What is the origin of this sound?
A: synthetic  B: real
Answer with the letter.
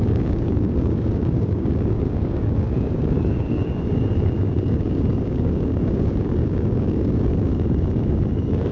A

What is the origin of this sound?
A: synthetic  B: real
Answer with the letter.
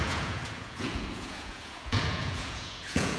A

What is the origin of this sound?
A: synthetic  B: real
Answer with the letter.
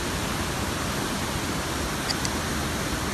B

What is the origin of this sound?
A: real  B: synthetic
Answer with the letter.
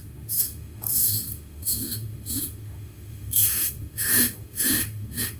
B